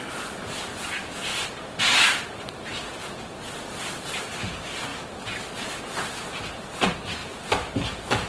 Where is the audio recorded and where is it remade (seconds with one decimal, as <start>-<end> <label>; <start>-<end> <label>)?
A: 0.0-8.3 recorded